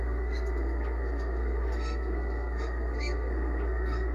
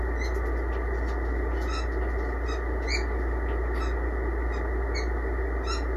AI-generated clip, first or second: first